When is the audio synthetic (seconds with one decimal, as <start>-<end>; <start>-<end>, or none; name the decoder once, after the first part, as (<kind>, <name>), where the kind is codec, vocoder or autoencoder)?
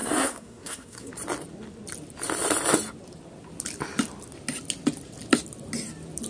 0.0-1.1 (codec, SNAC)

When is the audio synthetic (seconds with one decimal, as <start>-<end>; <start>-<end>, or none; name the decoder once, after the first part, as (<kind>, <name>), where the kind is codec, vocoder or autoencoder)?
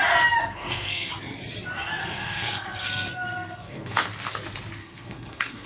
0.4-1.1 (codec, SNAC); 2.0-4.1; 4.8-5.7